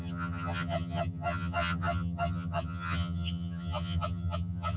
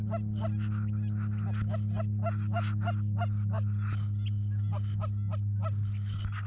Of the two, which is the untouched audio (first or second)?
second